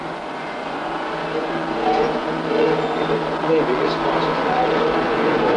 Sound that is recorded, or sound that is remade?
remade